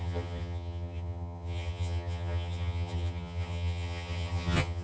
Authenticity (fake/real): fake